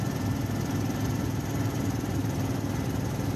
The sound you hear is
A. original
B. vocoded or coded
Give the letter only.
A